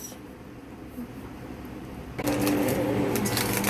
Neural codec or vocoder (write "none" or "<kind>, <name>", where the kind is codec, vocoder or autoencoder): none